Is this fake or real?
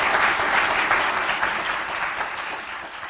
real